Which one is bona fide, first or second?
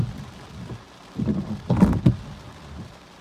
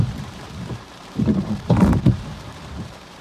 first